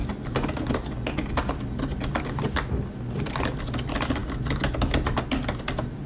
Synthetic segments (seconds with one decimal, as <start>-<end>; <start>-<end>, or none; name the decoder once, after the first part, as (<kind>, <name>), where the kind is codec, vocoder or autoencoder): none